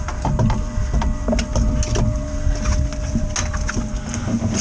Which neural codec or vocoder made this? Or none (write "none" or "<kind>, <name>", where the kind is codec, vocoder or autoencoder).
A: none